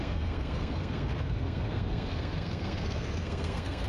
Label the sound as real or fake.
fake